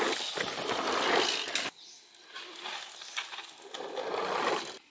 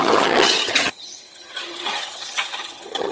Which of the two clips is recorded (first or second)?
first